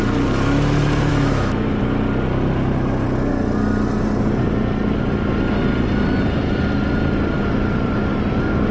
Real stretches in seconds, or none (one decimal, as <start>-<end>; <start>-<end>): 0.0-1.1; 1.8-8.7